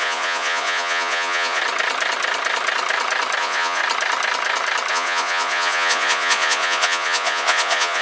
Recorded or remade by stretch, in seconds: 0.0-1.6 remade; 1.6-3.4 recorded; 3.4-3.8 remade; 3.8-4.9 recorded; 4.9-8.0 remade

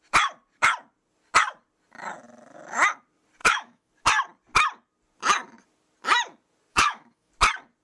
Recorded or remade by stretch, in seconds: 0.0-3.4 recorded; 3.4-3.9 remade; 3.9-6.7 recorded; 6.7-7.3 remade; 7.3-7.8 recorded

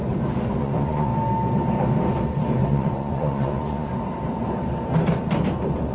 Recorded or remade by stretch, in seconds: 0.0-0.6 recorded; 0.6-1.1 remade; 1.1-2.7 recorded; 2.7-3.9 remade; 3.9-5.9 recorded

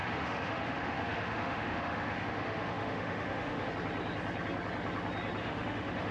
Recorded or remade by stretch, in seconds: 0.0-3.7 remade; 3.7-5.4 recorded; 5.4-6.1 remade

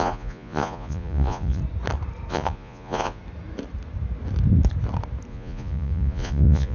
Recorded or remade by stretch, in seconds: 0.0-1.6 remade; 1.6-2.3 recorded; 2.3-3.2 remade; 3.2-5.3 recorded; 5.3-6.7 remade

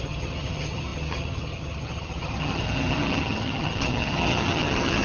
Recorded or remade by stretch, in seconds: 0.0-5.0 remade